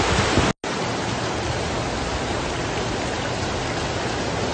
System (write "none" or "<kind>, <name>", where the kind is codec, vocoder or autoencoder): none